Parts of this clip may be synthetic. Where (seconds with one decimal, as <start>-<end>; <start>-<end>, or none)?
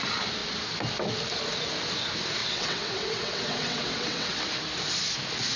2.4-4.4